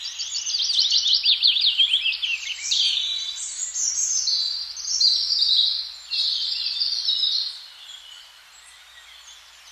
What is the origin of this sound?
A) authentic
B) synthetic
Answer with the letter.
B